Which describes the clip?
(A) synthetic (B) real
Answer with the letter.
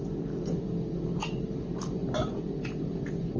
B